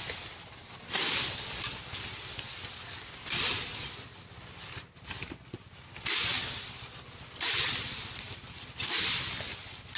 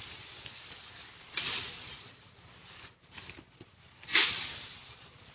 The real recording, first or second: first